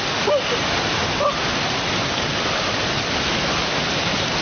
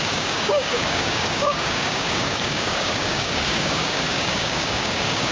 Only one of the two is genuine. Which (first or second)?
first